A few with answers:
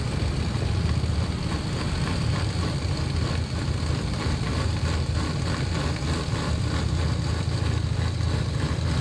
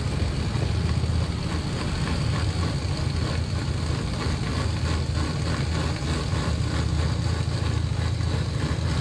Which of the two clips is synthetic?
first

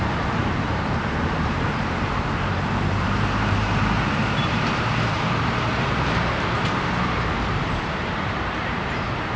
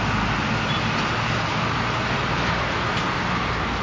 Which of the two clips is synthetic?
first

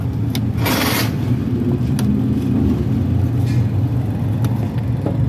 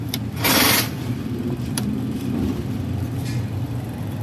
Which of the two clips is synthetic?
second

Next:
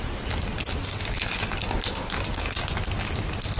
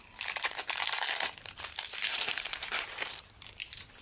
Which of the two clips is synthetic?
second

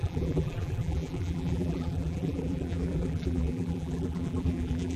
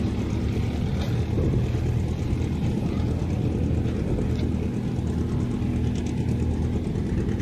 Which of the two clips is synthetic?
first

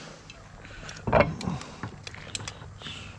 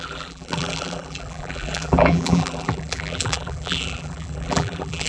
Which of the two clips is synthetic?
second